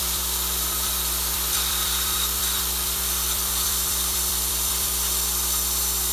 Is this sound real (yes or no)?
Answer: no